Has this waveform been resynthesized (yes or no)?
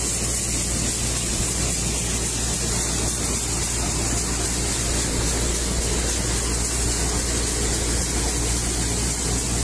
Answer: no